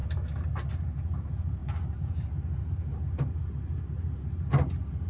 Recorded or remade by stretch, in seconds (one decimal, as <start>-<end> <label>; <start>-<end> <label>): 0.0-5.1 recorded